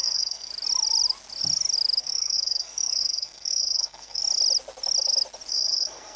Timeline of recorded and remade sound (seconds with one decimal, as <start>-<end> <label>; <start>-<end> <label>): 0.0-0.5 remade; 0.5-2.0 recorded; 2.0-4.2 remade; 4.2-5.5 recorded; 5.5-6.2 remade